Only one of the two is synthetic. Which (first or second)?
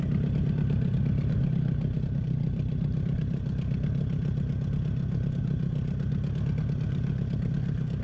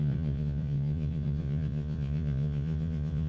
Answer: second